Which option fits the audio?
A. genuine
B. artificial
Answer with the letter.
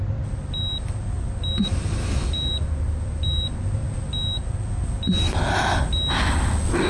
A